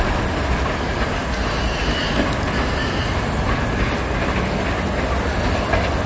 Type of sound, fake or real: real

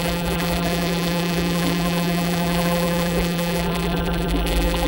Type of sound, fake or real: fake